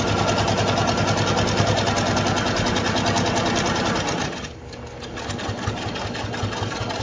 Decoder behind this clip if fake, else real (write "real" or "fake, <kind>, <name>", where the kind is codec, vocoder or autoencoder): real